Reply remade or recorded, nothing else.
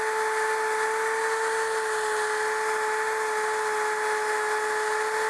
recorded